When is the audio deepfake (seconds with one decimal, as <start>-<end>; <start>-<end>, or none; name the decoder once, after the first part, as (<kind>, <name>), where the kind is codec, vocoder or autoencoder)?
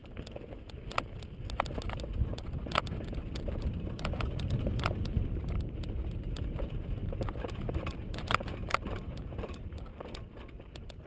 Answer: 3.4-7.0 (vocoder, BigVGAN v2); 7.7-9.9; 10.5-11.1